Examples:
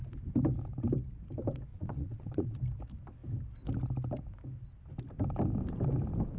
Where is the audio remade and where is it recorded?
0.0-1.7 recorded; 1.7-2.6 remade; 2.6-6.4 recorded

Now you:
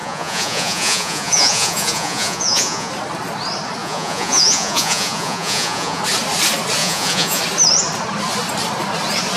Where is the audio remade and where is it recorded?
0.0-2.9 remade; 2.9-3.8 recorded; 3.8-6.0 remade; 6.0-6.8 recorded; 6.8-7.4 remade; 7.4-9.4 recorded

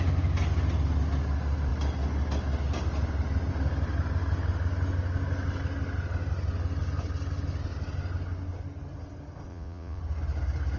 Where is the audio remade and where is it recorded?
0.0-9.5 recorded; 9.5-10.0 remade; 10.0-10.8 recorded

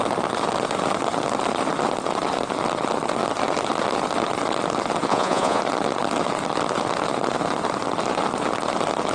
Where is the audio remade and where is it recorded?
0.0-5.1 recorded; 5.1-5.6 remade; 5.6-9.1 recorded

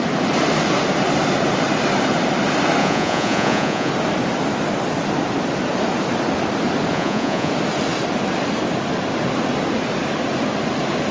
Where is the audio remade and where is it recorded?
0.0-2.8 recorded; 2.8-3.9 remade; 3.9-6.9 recorded; 6.9-7.5 remade; 7.5-11.1 recorded

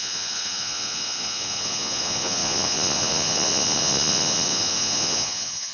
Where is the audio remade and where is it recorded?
0.0-5.7 remade

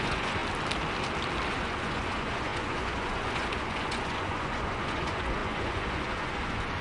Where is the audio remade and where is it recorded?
0.0-0.4 remade; 0.4-1.5 recorded; 1.5-6.8 remade